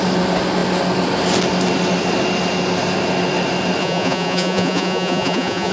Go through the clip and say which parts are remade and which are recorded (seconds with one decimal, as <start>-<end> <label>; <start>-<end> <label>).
0.0-3.8 recorded; 3.8-5.7 remade